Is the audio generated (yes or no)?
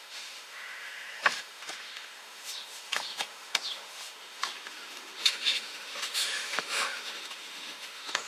yes